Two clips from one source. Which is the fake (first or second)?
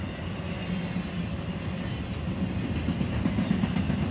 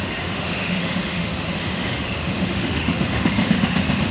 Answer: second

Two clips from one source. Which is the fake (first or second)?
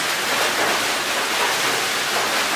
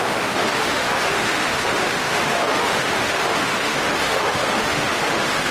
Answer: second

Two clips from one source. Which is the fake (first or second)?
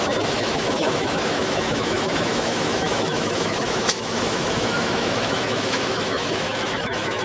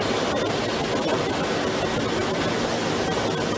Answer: first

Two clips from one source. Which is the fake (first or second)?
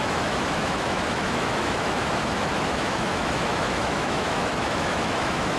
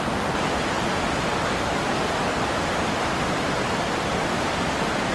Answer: first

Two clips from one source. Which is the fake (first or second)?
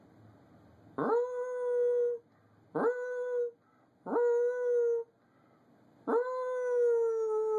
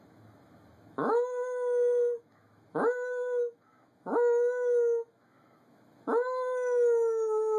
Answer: second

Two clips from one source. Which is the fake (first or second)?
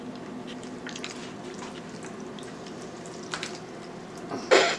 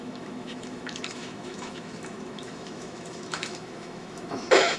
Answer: second